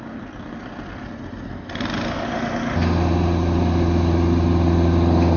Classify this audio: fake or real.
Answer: real